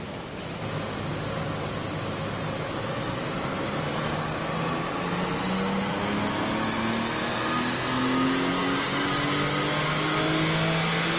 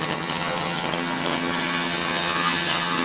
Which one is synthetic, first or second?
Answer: second